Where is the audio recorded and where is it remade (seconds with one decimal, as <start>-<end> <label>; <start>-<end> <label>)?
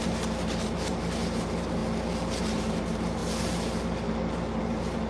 0.0-1.8 remade; 1.8-2.4 recorded; 2.4-3.2 remade; 3.2-4.6 recorded; 4.6-5.1 remade